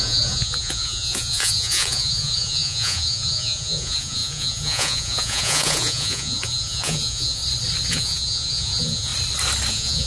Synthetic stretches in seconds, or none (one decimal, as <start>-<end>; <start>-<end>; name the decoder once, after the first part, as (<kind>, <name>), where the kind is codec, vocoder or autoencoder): 0.0-7.4 (vocoder, Vocos); 7.9-9.1; 9.7-10.1